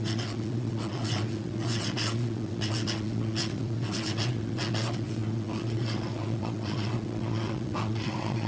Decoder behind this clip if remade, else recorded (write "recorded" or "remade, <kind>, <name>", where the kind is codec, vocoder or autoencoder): remade, vocoder, WaveNeXt